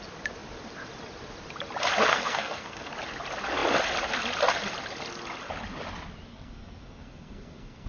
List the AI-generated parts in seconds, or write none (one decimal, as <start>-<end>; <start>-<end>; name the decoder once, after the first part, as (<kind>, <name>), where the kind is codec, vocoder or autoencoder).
2.1-2.9 (codec, SNAC); 6.3-7.9